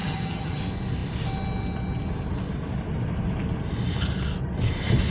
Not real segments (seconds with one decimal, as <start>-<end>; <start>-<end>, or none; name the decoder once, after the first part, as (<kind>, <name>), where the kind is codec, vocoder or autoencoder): 0.0-0.6 (vocoder, HiFi-GAN)